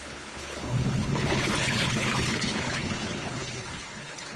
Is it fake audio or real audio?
fake